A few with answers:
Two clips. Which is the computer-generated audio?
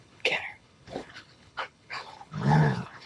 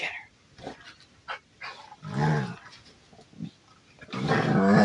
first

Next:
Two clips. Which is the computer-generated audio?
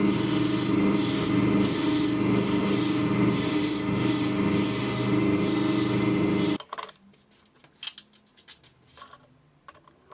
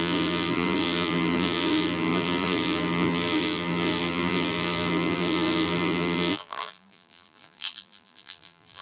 second